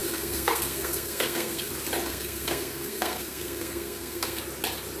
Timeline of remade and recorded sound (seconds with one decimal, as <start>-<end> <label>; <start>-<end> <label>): 0.0-1.7 remade; 1.7-2.1 recorded; 2.1-4.4 remade; 4.4-5.0 recorded